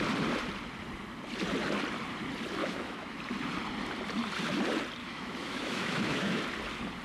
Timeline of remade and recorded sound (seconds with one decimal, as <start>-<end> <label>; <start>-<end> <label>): 0.0-2.6 recorded; 2.6-3.2 remade; 3.2-5.0 recorded; 5.0-6.4 remade; 6.4-7.0 recorded